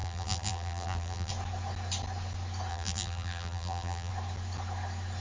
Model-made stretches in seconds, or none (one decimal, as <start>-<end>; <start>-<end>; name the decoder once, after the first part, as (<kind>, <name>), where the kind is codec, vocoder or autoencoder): 0.0-1.3 (vocoder, BigVGAN v2); 2.7-4.1